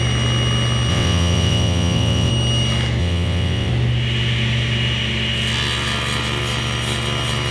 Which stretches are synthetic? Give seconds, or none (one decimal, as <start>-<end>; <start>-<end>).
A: 0.9-2.3; 3.0-3.7